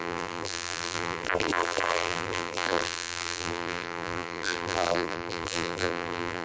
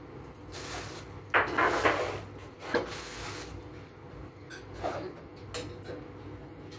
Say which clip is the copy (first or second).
first